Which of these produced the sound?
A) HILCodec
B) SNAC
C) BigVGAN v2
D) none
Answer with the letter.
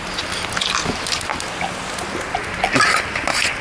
D